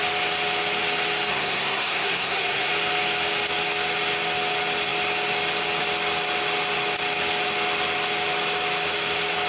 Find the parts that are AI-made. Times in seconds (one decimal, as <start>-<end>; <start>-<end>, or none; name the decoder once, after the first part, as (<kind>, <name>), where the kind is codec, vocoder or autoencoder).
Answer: 1.3-2.7 (codec, SNAC)

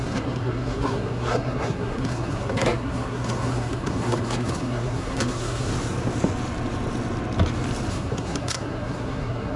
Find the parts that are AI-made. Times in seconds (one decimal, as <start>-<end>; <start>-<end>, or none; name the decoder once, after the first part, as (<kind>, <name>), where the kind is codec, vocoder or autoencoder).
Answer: 0.0-5.7 (codec, SNAC); 7.9-9.6

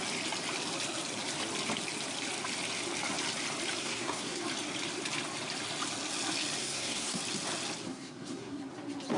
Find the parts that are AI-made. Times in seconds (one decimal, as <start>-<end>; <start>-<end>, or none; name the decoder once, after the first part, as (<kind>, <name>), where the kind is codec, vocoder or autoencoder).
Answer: 3.8-4.4 (codec, SNAC); 6.6-7.2; 7.9-8.7

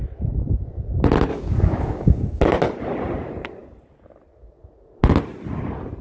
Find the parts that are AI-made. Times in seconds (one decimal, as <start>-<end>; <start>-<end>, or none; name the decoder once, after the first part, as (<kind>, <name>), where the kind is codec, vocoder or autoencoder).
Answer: 1.3-2.4 (codec, DAC)

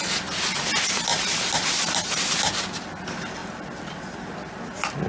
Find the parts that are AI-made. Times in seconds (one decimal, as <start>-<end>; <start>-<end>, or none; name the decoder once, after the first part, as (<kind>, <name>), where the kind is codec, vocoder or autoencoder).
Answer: none

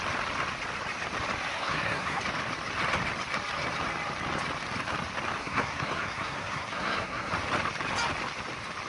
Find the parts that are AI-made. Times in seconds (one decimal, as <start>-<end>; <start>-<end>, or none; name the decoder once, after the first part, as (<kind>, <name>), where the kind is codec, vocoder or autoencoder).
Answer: 1.5-2.2 (codec, SNAC); 5.4-7.3

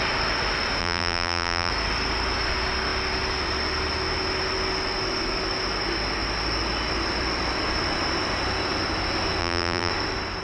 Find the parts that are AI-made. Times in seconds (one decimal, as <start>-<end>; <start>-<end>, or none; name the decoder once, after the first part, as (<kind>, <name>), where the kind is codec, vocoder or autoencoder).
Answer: 0.8-1.7 (vocoder, BigVGAN v2); 9.4-9.9

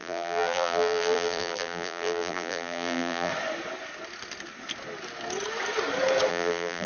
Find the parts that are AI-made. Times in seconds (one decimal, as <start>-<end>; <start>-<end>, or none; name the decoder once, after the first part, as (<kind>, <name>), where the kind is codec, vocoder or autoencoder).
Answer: 0.0-3.3 (vocoder, BigVGAN v2); 6.3-6.9